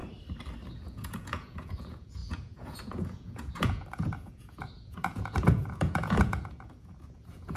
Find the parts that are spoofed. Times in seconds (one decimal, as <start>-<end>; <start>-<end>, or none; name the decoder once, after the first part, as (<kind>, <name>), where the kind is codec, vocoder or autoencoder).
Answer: 0.7-7.6 (vocoder, Vocos)